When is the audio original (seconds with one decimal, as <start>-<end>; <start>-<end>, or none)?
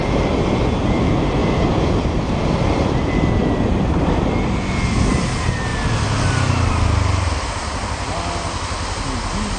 0.0-1.4; 4.5-9.6